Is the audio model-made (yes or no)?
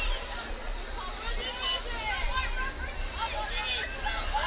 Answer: no